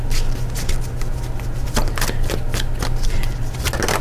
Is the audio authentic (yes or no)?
yes